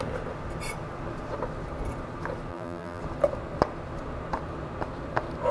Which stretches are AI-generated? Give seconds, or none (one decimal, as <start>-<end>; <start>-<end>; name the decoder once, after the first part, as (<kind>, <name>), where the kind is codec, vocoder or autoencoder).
2.5-3.0 (vocoder, BigVGAN v2)